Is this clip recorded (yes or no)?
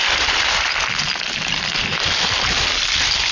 yes